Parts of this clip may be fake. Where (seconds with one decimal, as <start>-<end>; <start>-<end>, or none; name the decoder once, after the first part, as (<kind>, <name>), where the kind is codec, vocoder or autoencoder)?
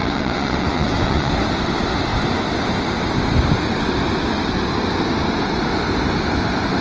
0.0-1.3 (vocoder, WaveNeXt)